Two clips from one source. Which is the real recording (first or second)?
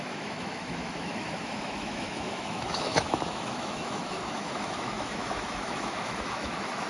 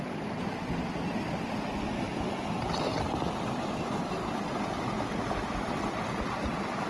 second